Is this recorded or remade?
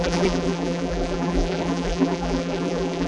remade